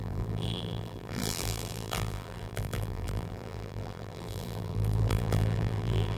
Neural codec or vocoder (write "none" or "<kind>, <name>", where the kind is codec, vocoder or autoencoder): vocoder, BigVGAN v2